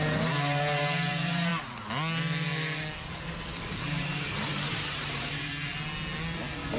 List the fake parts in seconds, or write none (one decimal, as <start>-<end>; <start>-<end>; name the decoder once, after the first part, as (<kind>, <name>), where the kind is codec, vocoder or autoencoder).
0.0-1.5 (vocoder, BigVGAN v2); 3.7-5.7